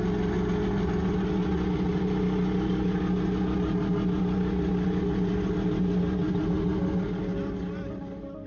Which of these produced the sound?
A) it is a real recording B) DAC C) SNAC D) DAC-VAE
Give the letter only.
A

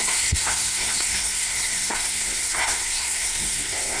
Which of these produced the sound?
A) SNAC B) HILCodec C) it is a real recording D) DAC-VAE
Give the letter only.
A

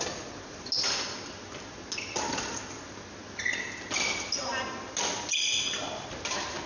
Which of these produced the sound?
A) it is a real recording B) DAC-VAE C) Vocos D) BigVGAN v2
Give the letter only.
A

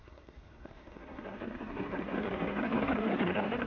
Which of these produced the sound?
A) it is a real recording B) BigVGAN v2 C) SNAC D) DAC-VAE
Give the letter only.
C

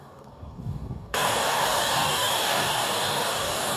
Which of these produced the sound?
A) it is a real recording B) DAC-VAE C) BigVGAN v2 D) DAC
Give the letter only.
D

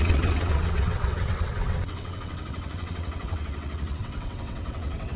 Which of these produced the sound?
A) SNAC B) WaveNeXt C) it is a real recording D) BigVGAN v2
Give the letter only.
B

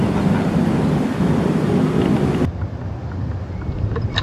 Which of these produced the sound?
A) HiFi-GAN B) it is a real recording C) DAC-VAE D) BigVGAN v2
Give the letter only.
D